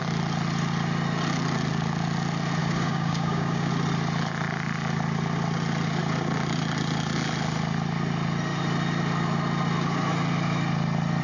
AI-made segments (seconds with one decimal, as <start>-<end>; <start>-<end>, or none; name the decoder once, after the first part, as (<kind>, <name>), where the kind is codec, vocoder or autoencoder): 2.6-3.7 (codec, DAC)